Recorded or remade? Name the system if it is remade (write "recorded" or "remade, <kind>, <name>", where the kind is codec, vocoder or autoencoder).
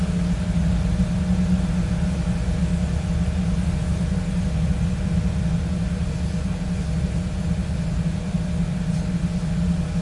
recorded